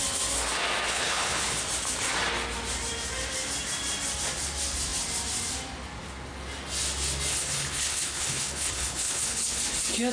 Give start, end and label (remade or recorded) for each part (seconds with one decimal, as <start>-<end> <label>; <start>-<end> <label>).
0.0-0.9 recorded; 0.9-1.6 remade; 1.6-7.3 recorded; 7.3-9.6 remade; 9.6-10.1 recorded